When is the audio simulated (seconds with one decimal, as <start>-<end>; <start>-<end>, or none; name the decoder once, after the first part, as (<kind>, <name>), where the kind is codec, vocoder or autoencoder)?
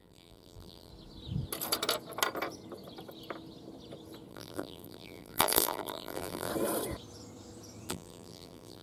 0.0-0.9 (vocoder, BigVGAN v2); 4.3-6.5; 7.9-8.8